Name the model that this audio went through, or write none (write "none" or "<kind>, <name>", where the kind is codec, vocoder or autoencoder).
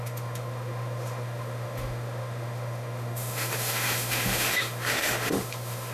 autoencoder, DAC-VAE